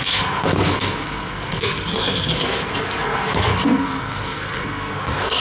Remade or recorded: remade